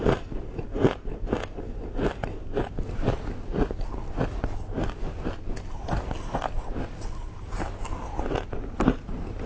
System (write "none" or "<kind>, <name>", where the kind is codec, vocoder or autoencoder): none